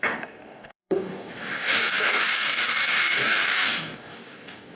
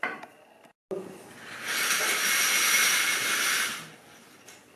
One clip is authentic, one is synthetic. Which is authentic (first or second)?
second